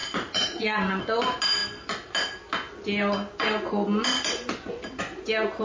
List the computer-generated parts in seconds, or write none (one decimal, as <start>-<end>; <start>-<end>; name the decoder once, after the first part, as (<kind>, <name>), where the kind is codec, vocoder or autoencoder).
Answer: 0.0-1.0 (vocoder, Vocos)